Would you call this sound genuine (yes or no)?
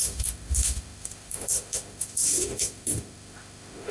no